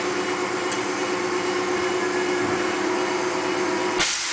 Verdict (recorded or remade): recorded